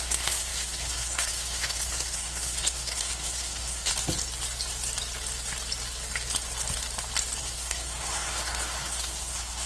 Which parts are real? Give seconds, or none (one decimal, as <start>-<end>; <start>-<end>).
3.9-7.4